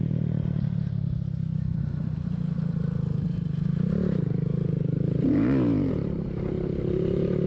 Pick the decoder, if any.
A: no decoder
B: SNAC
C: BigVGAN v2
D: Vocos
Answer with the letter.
C